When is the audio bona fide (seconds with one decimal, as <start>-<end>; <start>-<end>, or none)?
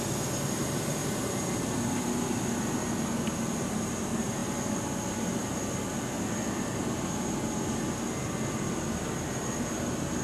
0.0-1.0; 1.6-10.2